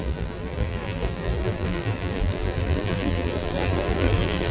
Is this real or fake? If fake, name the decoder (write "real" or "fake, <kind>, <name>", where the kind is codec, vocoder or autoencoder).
fake, vocoder, BigVGAN v2